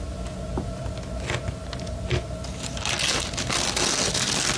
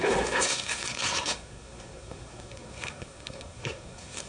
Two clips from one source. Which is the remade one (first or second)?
second